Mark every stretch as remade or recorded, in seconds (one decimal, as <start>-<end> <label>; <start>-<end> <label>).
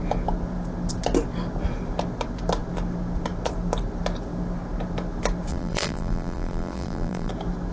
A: 0.0-5.5 recorded; 5.5-7.3 remade; 7.3-7.7 recorded